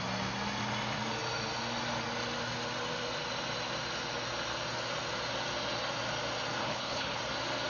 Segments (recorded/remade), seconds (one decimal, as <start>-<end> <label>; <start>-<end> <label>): 0.0-6.6 recorded; 6.6-7.2 remade; 7.2-7.7 recorded